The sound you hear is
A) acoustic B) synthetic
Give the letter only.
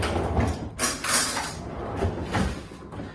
A